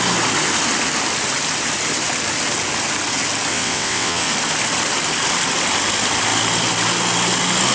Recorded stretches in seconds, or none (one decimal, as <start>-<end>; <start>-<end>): 0.0-3.5; 4.3-7.7